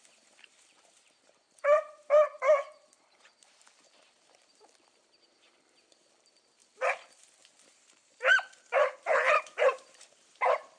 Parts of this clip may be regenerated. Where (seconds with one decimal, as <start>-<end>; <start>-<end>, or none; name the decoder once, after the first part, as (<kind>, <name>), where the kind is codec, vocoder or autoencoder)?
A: 0.0-6.6 (vocoder, BigVGAN v2); 7.5-10.8